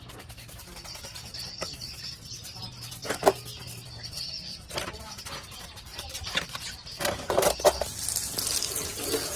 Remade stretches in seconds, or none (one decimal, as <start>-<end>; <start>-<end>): 5.9-7.6